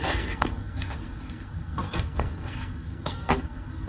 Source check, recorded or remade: remade